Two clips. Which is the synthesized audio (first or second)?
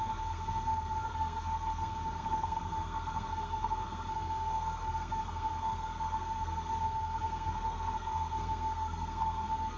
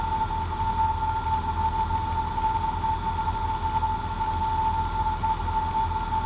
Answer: first